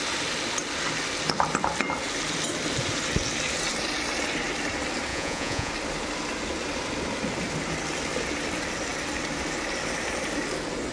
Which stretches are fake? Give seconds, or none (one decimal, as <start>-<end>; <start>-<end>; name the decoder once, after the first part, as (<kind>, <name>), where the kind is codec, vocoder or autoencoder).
5.1-5.7 (vocoder, Vocos)